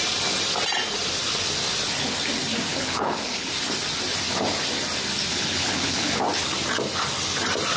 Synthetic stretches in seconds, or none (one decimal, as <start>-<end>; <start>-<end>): 2.7-3.5; 5.3-6.2